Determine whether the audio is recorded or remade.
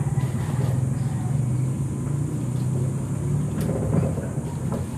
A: recorded